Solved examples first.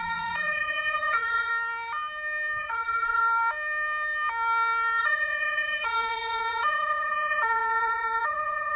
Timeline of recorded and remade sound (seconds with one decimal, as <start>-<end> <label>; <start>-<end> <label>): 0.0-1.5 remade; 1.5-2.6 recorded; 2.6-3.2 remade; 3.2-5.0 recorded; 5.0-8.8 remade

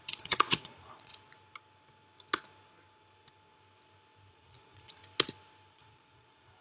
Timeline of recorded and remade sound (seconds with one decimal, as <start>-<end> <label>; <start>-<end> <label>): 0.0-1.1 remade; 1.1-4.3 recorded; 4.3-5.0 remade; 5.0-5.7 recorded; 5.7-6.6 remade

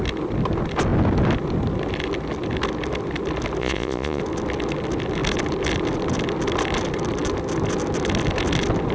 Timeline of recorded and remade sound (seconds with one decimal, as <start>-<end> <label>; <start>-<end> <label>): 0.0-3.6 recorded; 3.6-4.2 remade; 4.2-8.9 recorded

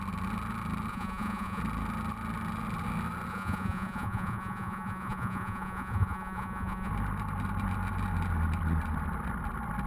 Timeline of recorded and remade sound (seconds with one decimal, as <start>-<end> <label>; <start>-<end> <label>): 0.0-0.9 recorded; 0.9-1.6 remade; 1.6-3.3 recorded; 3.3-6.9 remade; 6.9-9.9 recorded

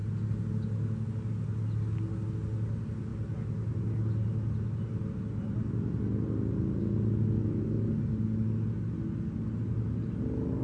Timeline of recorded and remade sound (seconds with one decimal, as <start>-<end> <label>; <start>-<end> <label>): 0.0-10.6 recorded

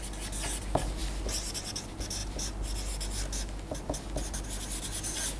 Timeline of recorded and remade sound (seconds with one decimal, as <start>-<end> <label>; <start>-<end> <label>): 0.0-5.4 recorded

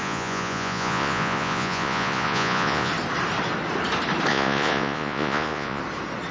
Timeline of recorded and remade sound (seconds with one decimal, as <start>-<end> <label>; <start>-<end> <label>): 0.0-2.9 remade; 2.9-4.3 recorded; 4.3-5.8 remade; 5.8-6.3 recorded

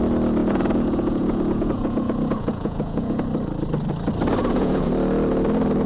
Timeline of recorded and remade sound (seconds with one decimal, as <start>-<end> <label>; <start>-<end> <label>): 0.0-0.4 recorded; 0.4-3.2 remade; 3.2-4.4 recorded; 4.4-4.9 remade; 4.9-5.9 recorded